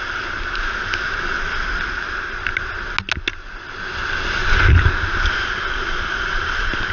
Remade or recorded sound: recorded